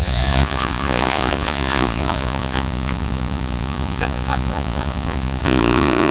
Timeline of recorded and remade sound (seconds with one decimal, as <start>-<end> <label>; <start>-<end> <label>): 0.0-6.1 remade